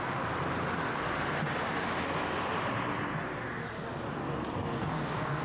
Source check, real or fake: real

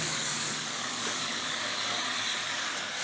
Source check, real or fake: fake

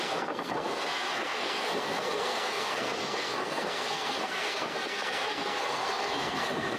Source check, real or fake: fake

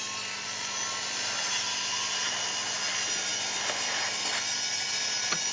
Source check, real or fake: real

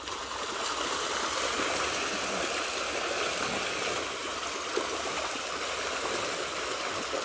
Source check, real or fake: real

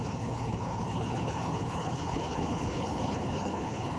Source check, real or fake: fake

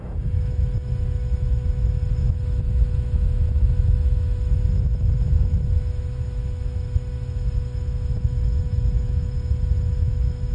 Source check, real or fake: fake